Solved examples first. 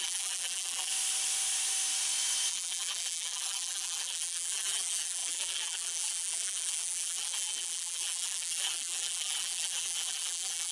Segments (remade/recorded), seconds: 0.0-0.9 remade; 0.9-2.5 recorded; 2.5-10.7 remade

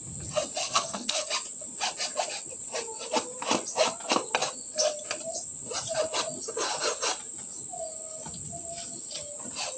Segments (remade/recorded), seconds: 0.0-0.6 recorded; 0.6-1.3 remade; 1.3-9.8 recorded